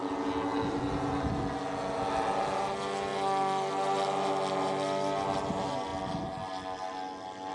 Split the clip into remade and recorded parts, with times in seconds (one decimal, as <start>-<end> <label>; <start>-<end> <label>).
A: 0.0-7.5 recorded